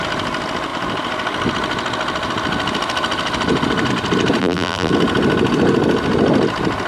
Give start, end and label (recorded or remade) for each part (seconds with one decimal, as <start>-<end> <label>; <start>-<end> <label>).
0.0-4.4 recorded; 4.4-4.9 remade; 4.9-6.9 recorded